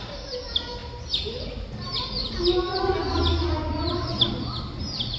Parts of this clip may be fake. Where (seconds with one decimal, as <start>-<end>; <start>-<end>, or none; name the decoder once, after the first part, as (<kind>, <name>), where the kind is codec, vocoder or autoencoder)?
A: none